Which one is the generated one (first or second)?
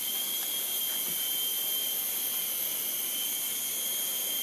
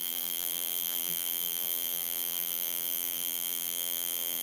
second